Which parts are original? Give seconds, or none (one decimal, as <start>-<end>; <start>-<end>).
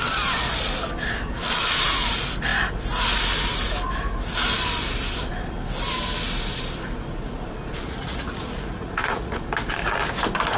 0.0-7.8; 9.4-10.6